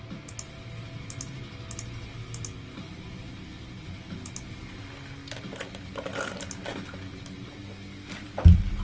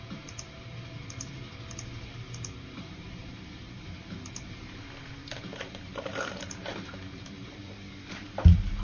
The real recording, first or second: first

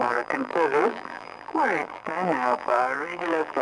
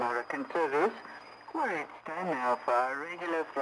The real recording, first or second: second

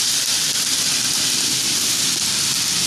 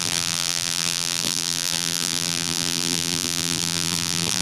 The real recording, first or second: first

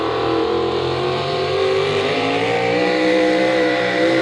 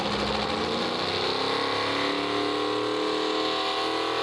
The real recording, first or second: second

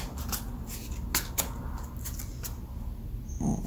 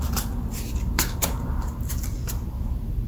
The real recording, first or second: first